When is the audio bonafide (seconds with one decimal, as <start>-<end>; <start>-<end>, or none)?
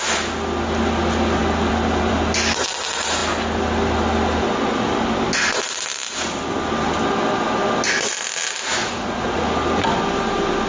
0.0-8.8; 9.5-10.7